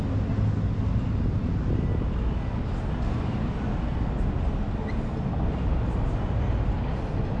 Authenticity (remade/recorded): recorded